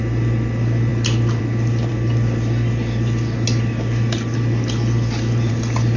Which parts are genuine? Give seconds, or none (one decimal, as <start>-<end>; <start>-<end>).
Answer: 0.0-6.0